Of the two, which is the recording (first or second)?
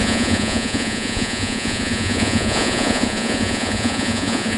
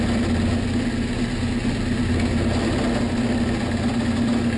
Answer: second